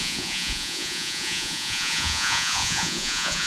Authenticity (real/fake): fake